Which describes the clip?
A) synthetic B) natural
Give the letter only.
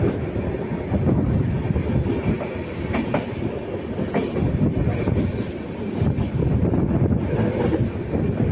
B